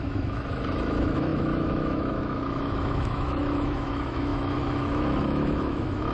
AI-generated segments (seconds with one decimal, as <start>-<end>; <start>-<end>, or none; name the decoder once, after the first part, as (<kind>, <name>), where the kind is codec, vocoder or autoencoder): 0.0-6.1 (autoencoder, DAC-VAE)